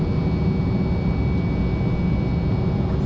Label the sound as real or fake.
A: real